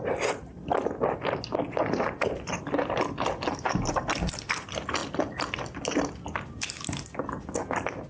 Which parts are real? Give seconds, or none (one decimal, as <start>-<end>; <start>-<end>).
0.0-8.1